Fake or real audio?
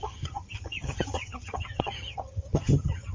fake